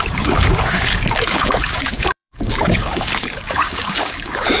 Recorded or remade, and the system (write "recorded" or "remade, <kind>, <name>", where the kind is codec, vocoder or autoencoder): remade, codec, DAC